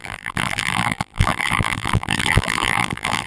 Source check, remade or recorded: remade